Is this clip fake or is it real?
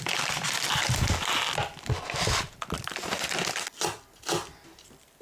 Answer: real